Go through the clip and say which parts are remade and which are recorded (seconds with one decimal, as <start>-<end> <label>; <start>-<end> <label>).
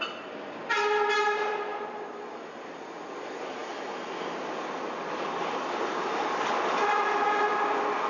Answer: 0.0-8.1 recorded